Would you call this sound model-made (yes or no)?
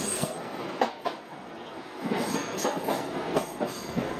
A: yes